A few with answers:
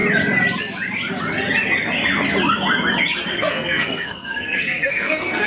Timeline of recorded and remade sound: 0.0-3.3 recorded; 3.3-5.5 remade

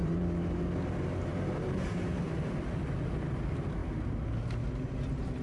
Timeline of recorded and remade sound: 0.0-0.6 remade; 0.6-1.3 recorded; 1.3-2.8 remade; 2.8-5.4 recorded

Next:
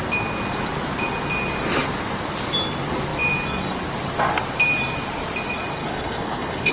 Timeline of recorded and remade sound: 0.0-5.8 recorded; 5.8-6.7 remade